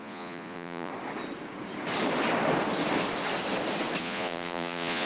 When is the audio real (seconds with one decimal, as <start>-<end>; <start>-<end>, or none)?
0.9-4.0